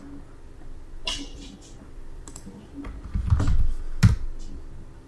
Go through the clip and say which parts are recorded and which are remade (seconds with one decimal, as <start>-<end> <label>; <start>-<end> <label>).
0.0-1.0 recorded; 1.0-3.3 remade; 3.3-5.1 recorded